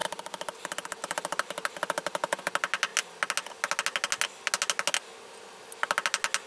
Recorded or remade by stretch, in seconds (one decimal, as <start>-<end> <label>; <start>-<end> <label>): 0.0-6.5 recorded